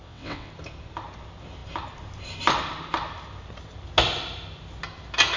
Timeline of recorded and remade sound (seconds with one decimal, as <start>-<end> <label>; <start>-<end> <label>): 0.0-0.5 remade; 0.5-5.4 recorded